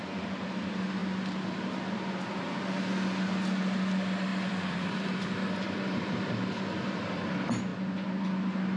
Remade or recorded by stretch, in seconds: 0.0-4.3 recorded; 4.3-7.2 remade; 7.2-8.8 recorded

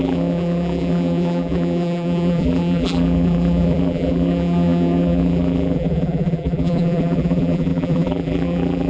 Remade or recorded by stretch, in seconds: 0.0-8.9 remade

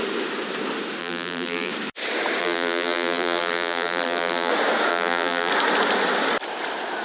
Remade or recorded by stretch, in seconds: 0.0-1.0 recorded; 1.0-1.7 remade; 1.7-2.4 recorded; 2.4-4.5 remade; 4.5-4.9 recorded; 4.9-5.5 remade; 5.5-7.0 recorded